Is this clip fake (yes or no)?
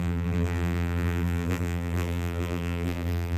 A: yes